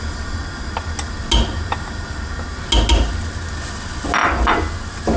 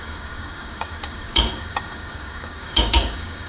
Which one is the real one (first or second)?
first